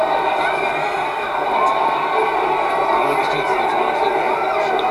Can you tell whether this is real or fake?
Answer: real